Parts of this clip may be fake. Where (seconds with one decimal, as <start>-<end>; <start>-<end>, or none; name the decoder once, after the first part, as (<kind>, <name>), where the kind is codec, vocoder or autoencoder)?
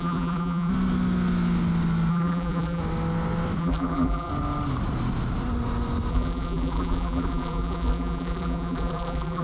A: 0.0-0.7 (vocoder, BigVGAN v2); 2.1-2.8; 3.6-4.3; 6.1-9.4